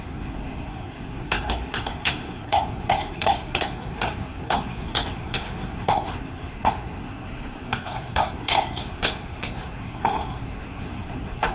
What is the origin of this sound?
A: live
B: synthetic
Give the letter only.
B